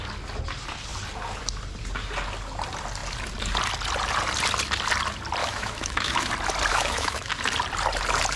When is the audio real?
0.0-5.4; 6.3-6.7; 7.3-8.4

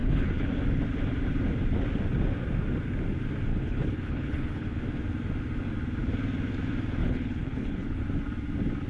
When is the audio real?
0.5-3.5; 4.8-7.0; 8.0-8.9

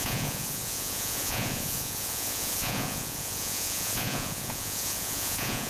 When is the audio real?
none

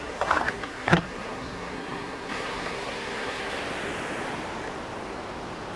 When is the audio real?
3.6-5.8

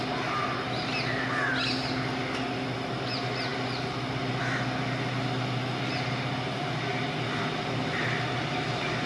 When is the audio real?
0.0-9.1

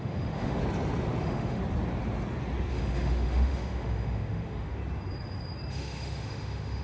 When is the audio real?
0.6-1.2; 1.6-2.7; 4.8-5.7